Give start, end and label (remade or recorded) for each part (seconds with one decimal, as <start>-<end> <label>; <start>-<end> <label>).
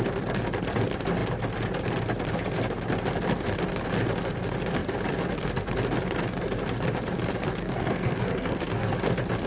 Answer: 0.0-7.6 recorded; 7.6-8.9 remade; 8.9-9.5 recorded